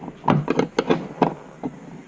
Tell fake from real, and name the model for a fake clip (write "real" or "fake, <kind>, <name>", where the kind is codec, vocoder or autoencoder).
real